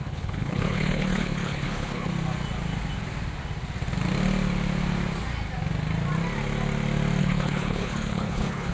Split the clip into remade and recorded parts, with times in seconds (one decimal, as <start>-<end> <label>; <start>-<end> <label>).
0.0-2.1 remade; 2.1-7.2 recorded; 7.2-8.7 remade